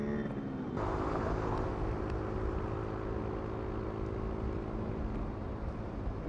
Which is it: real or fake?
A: real